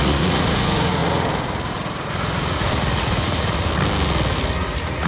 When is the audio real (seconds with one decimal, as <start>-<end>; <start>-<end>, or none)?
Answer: 3.7-4.6